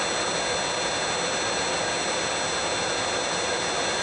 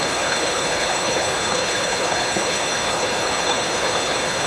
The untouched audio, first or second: first